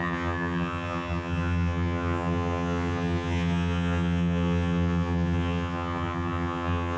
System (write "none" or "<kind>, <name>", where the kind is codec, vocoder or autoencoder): vocoder, HiFi-GAN